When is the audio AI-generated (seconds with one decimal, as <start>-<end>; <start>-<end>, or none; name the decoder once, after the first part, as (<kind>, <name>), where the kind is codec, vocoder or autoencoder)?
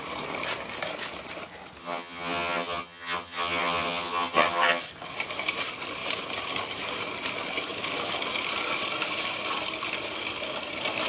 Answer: 1.8-4.8 (vocoder, HiFi-GAN)